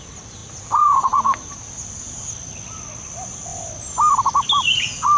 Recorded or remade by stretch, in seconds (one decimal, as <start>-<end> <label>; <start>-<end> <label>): 0.0-5.2 recorded